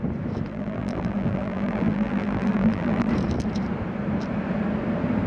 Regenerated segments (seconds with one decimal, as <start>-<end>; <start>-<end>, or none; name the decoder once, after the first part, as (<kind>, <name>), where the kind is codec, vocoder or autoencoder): 0.5-3.1 (vocoder, BigVGAN v2)